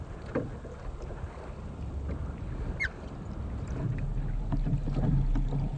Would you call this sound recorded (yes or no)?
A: yes